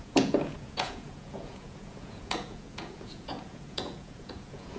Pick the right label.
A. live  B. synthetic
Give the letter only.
B